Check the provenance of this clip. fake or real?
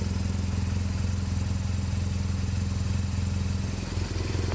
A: real